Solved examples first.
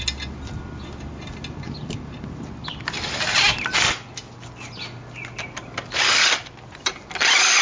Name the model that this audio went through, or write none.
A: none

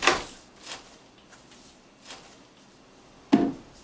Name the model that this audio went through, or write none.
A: none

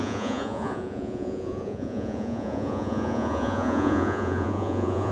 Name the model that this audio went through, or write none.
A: vocoder, Vocos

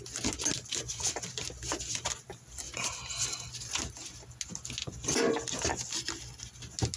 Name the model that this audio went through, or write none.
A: none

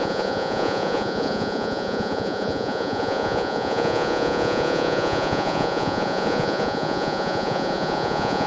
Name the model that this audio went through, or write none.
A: vocoder, Vocos